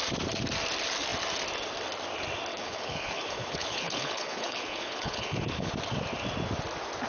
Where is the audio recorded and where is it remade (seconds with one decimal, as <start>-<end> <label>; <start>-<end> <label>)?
0.0-2.5 recorded; 2.5-5.7 remade; 5.7-7.1 recorded